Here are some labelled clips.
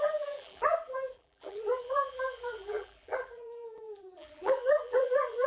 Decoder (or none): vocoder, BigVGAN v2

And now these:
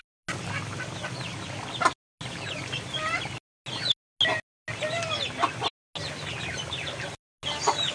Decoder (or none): none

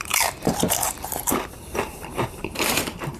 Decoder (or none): vocoder, BigVGAN v2